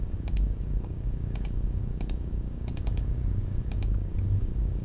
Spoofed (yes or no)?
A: yes